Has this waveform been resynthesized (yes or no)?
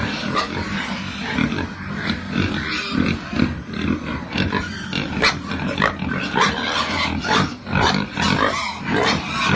no